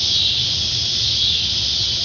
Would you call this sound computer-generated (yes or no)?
no